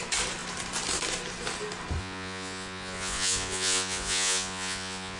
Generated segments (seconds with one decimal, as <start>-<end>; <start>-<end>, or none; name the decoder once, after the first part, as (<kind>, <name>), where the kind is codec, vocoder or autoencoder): 2.0-5.2 (vocoder, Vocos)